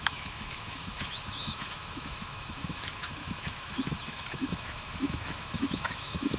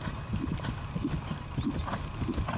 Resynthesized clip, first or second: first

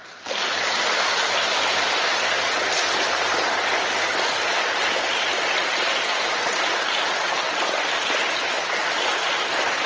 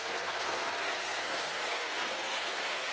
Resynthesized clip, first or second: second